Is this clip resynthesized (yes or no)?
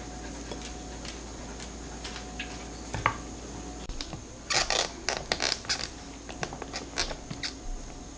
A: no